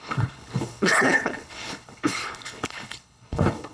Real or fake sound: fake